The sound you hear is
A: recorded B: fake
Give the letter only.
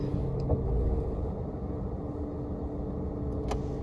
A